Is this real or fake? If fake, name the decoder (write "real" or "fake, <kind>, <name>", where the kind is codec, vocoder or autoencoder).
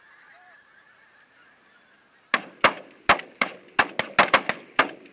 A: real